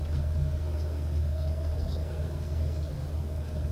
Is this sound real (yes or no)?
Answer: no